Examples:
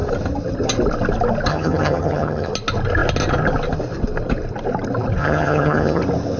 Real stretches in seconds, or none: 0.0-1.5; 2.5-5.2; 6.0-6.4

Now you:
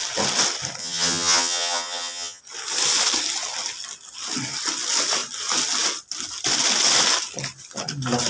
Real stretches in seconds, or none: 0.0-0.8; 2.4-8.3

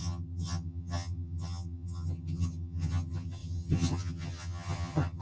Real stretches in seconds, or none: none

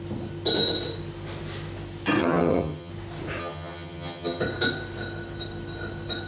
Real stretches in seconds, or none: 0.0-2.2; 2.9-3.4; 4.4-6.3